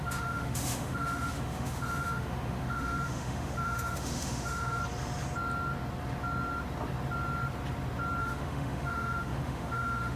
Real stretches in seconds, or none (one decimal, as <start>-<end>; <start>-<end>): 4.8-8.2